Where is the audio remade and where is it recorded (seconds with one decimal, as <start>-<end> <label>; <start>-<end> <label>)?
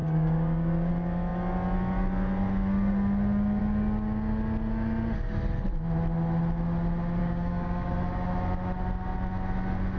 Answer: 0.0-0.9 remade; 0.9-7.2 recorded; 7.2-7.9 remade; 7.9-10.0 recorded